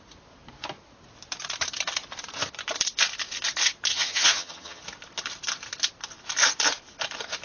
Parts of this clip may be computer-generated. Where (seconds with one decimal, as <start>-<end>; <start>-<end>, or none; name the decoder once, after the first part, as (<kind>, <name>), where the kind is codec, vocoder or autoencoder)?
3.9-4.8 (vocoder, HiFi-GAN)